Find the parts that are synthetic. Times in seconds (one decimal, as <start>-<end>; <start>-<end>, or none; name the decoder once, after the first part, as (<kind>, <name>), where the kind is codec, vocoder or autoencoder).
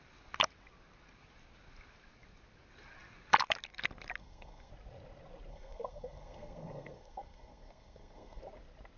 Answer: 4.2-4.7 (codec, SNAC); 5.5-8.4